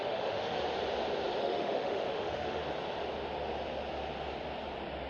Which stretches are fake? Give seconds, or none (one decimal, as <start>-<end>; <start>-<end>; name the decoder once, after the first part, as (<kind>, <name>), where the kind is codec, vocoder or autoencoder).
0.0-0.6 (autoencoder, DAC-VAE); 1.4-2.6